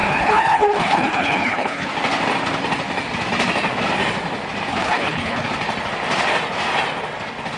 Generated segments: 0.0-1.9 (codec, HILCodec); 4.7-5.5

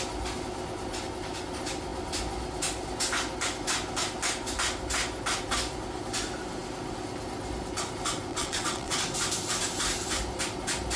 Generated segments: 8.3-8.9 (vocoder, WaveNeXt)

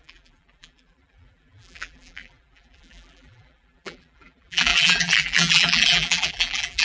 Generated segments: 0.0-6.8 (vocoder, BigVGAN v2)

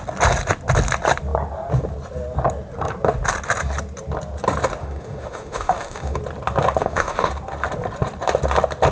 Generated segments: 4.8-6.2 (autoencoder, DAC-VAE); 6.8-7.3

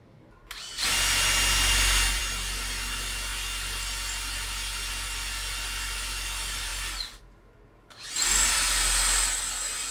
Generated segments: none

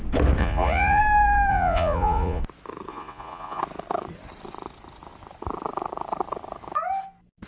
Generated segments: 0.4-1.0 (vocoder, Vocos); 1.5-2.4; 2.9-3.6

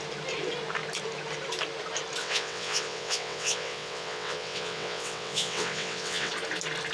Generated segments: 2.2-6.3 (vocoder, WaveNeXt)

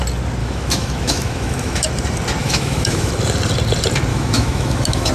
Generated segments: 0.4-1.9 (autoencoder, DAC-VAE); 2.4-3.1; 4.1-5.1